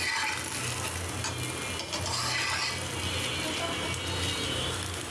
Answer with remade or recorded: recorded